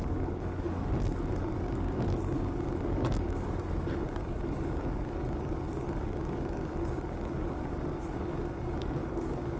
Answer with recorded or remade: remade